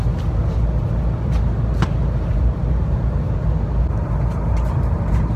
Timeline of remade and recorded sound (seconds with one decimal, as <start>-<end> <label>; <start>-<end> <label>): 0.0-2.3 recorded; 2.3-3.2 remade; 3.2-5.4 recorded